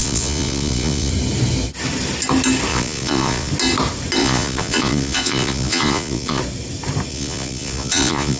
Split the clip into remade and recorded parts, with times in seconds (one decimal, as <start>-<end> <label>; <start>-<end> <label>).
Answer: 0.0-1.1 remade; 1.1-2.7 recorded; 2.7-3.5 remade; 3.5-4.2 recorded; 4.2-6.4 remade; 6.4-7.1 recorded; 7.1-8.4 remade